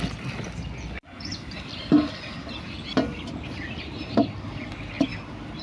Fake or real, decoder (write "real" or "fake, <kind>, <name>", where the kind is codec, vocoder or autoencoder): real